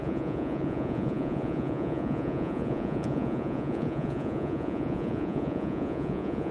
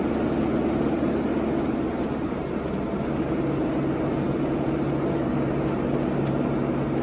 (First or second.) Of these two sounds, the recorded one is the second